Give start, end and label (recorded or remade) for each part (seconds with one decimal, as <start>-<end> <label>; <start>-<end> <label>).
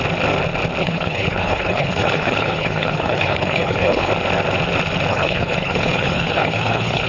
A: 0.0-0.8 recorded; 0.8-4.1 remade; 4.1-5.1 recorded; 5.1-7.1 remade